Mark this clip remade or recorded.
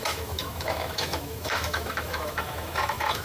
remade